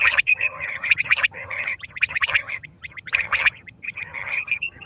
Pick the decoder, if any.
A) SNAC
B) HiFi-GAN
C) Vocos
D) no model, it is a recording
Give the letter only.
B